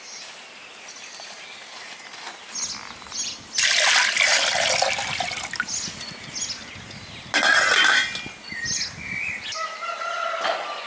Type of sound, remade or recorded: recorded